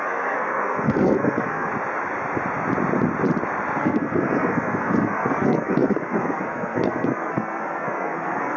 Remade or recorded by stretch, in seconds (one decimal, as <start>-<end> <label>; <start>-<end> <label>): 0.0-1.7 remade; 1.7-3.8 recorded; 3.8-8.6 remade